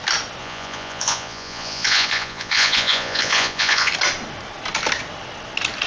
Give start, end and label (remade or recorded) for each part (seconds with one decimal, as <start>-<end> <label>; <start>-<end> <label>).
0.0-0.4 recorded; 0.4-3.9 remade; 3.9-5.9 recorded